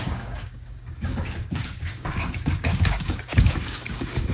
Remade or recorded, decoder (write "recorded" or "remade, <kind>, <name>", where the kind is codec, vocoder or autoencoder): remade, codec, DAC